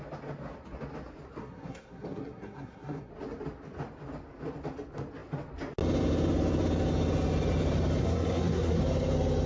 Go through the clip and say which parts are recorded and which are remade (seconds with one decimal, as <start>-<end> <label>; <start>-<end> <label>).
0.0-1.4 recorded; 1.4-3.1 remade; 3.1-8.0 recorded; 8.0-8.8 remade; 8.8-9.5 recorded